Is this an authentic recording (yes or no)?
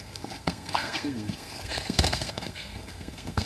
no